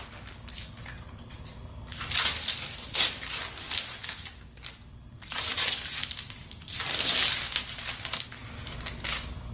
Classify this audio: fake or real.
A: real